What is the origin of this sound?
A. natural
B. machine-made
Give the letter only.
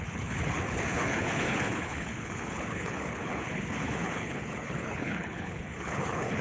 B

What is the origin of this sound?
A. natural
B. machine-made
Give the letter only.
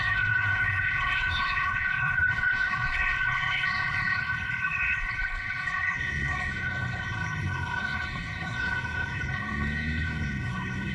B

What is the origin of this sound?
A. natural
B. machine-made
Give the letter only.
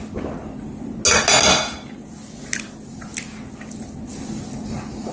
A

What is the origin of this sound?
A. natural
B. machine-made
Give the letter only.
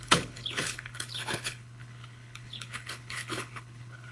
B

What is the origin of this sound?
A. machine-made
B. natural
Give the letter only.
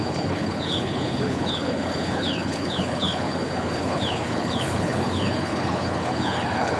A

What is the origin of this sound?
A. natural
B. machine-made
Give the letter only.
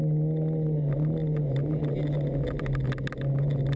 A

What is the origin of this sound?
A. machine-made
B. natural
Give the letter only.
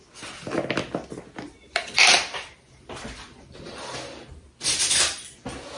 B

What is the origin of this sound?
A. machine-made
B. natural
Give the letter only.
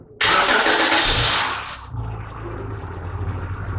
B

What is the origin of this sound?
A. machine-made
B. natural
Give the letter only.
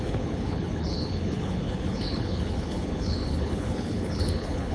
A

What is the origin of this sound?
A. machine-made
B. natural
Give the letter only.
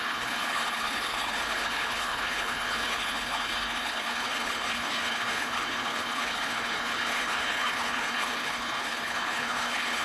A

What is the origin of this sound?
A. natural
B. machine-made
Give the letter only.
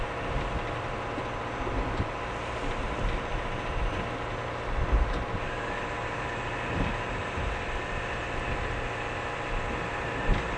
A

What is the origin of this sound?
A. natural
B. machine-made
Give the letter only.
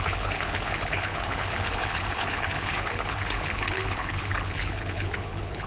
B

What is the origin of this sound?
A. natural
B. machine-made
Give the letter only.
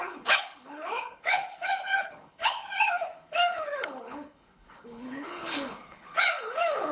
B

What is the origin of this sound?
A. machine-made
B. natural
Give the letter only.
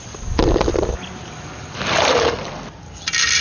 B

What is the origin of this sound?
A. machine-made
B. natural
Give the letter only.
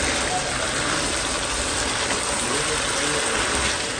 B